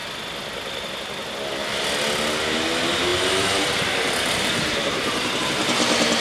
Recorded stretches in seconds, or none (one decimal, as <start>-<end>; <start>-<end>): 0.0-3.1; 5.4-6.2